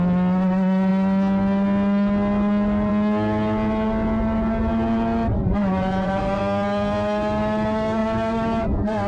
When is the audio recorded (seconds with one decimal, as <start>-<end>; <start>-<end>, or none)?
0.0-5.4; 6.4-9.1